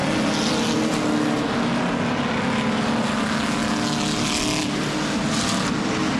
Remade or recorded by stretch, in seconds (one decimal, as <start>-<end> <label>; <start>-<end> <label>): 0.0-6.2 recorded